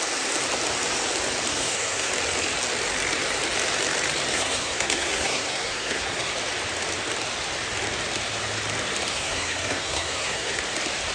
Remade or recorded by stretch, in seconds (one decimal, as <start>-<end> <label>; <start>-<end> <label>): 0.0-1.5 recorded; 1.5-2.1 remade; 2.1-4.3 recorded; 4.3-6.3 remade; 6.3-9.1 recorded; 9.1-10.6 remade; 10.6-11.1 recorded